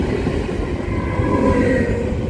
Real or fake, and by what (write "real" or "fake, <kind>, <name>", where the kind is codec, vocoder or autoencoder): real